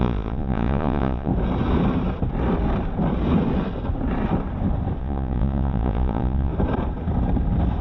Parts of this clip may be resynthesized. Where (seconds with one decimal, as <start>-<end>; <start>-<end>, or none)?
0.0-1.3; 5.0-6.5